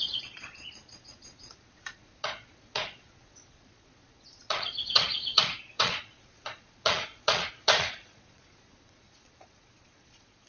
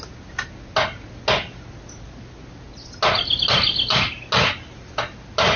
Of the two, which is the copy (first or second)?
first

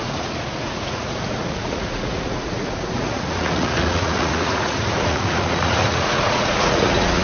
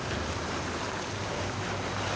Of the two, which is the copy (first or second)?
first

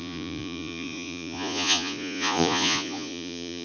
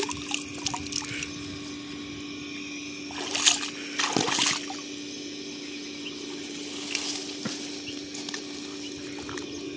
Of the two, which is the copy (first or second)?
first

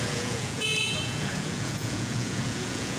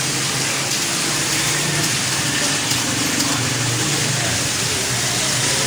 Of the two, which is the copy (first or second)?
first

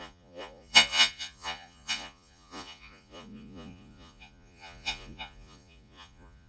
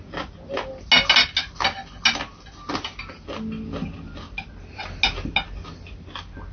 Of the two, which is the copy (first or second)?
first